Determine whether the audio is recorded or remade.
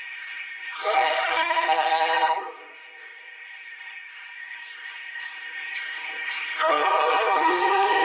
remade